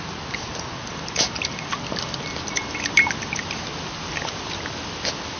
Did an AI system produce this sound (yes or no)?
no